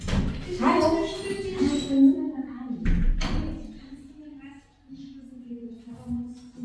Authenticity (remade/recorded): recorded